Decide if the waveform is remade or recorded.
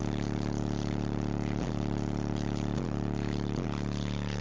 recorded